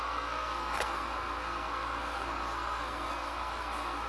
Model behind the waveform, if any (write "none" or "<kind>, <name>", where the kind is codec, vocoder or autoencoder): codec, SNAC